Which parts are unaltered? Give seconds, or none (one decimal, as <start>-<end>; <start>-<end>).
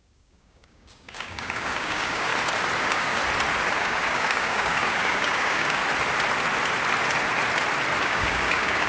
2.3-2.8; 3.2-3.8; 5.8-8.0